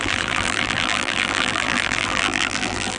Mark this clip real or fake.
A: fake